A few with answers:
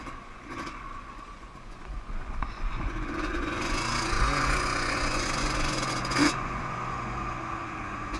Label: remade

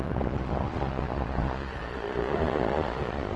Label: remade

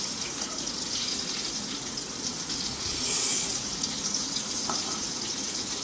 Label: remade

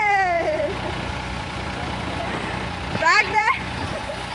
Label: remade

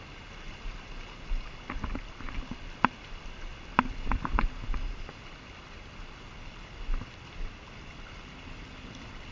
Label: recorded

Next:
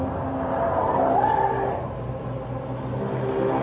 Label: recorded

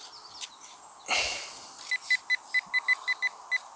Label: recorded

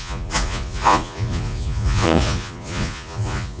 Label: remade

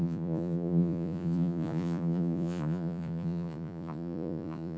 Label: remade